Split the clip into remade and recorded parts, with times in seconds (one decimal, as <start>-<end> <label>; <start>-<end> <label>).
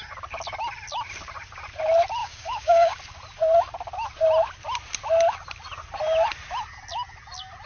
0.0-2.2 recorded; 2.2-3.0 remade; 3.0-7.7 recorded